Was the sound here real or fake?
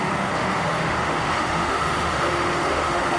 fake